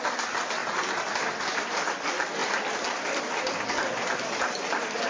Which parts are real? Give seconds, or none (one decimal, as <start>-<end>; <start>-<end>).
0.0-5.1